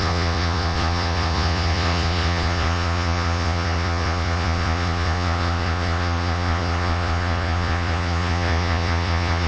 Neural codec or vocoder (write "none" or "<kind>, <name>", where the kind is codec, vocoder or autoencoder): vocoder, Vocos